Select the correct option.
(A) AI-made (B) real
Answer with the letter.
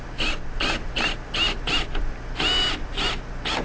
B